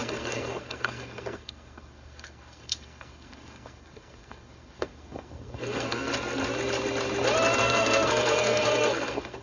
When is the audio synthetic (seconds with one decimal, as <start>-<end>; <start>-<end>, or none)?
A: 0.0-6.1; 7.6-9.4